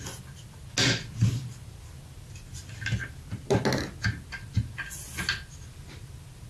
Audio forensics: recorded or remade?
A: recorded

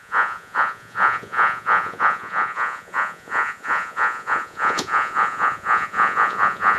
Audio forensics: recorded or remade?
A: remade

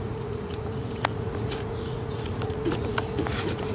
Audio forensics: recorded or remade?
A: remade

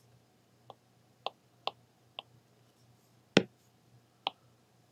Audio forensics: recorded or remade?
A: recorded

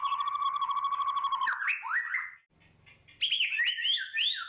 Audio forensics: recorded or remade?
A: recorded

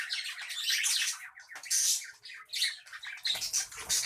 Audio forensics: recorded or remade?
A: recorded